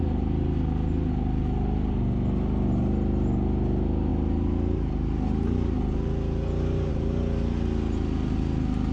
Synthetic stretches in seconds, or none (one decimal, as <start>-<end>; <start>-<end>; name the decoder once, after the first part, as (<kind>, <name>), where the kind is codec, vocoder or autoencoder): none